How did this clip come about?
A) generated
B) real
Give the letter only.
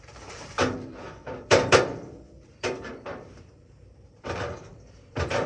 A